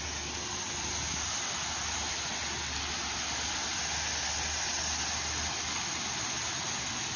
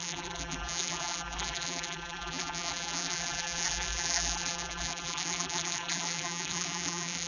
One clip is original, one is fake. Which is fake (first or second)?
second